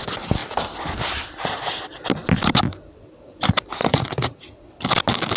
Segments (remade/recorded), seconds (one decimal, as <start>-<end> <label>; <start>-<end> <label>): 0.0-3.8 recorded; 3.8-4.7 remade; 4.7-5.4 recorded